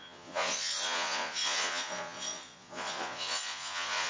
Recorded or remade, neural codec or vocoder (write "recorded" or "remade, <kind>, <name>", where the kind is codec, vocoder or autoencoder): remade, vocoder, Vocos